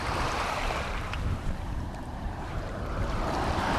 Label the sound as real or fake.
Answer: fake